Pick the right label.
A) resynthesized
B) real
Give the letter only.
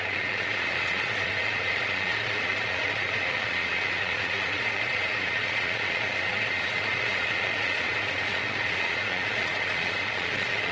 A